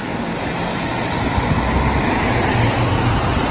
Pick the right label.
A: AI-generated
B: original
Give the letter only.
B